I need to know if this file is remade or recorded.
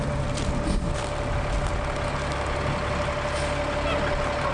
recorded